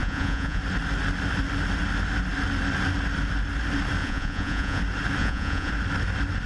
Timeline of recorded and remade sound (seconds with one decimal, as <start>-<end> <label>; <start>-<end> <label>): 0.0-0.6 remade; 0.6-4.0 recorded; 4.0-4.8 remade; 4.8-5.2 recorded; 5.2-5.7 remade; 5.7-6.5 recorded